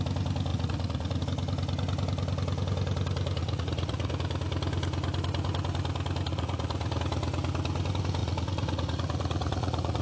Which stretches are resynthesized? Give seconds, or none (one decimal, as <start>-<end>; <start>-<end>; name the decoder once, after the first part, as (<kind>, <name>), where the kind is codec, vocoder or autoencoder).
0.5-1.2 (vocoder, Vocos); 3.4-4.1; 6.3-7.0; 8.2-10.0